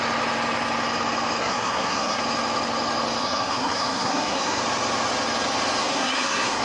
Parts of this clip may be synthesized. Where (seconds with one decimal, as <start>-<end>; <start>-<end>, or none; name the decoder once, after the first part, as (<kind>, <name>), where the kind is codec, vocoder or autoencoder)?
1.4-2.2 (codec, SNAC); 3.2-4.6; 5.8-6.6